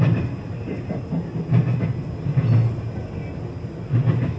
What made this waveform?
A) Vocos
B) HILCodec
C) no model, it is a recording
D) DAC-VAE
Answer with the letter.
C